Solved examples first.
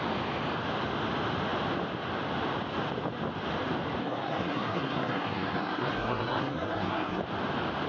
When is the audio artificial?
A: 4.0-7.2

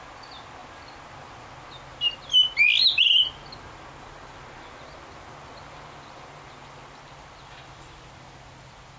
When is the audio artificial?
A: none

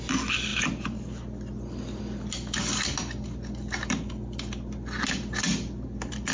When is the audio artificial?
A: none

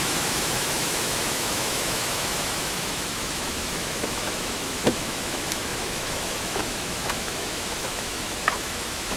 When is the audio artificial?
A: 0.0-9.2

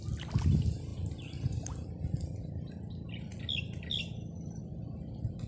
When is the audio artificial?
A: 0.9-1.9

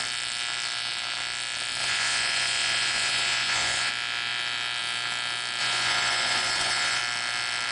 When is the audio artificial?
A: 1.8-3.9; 5.6-7.0

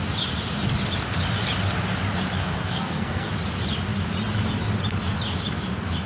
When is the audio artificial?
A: 2.4-3.3